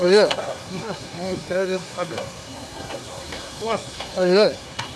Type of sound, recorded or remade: remade